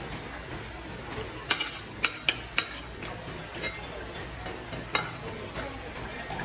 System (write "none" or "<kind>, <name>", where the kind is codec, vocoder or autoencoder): none